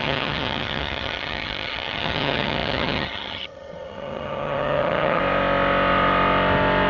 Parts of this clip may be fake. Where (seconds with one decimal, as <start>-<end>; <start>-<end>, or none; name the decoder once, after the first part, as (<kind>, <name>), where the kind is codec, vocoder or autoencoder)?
0.0-5.2 (vocoder, HiFi-GAN)